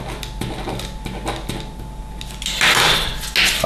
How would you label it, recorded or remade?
recorded